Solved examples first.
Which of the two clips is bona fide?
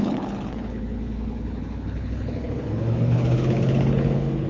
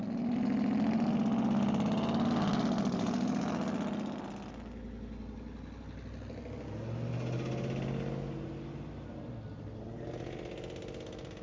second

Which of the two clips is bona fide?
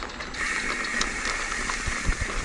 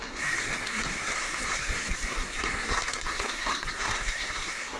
first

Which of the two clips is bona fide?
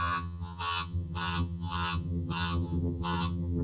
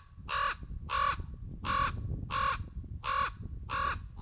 second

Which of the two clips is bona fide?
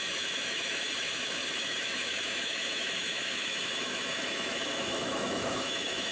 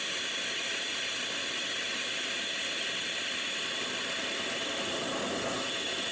second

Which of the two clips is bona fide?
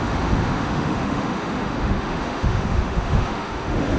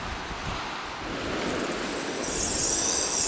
second